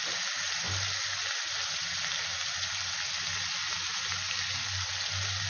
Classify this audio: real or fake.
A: real